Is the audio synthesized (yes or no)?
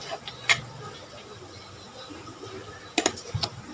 no